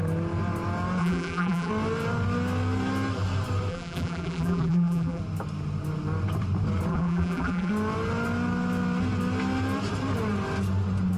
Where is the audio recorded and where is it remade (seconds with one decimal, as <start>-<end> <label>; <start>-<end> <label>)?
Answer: 0.0-1.0 recorded; 1.0-1.7 remade; 1.7-3.7 recorded; 3.7-5.2 remade; 5.2-6.9 recorded; 6.9-7.7 remade; 7.7-11.2 recorded